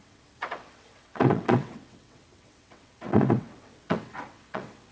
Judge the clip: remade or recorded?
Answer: remade